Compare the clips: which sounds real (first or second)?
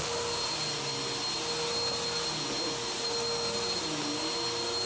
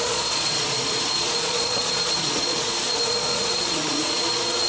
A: first